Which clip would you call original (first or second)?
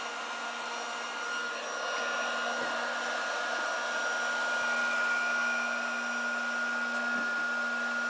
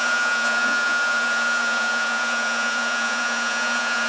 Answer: first